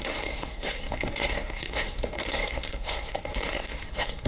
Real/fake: fake